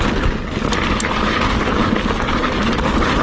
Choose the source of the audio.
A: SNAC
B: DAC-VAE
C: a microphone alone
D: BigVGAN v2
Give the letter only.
C